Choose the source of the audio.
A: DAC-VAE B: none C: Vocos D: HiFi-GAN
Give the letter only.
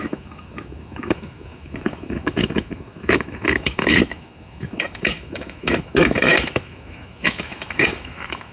A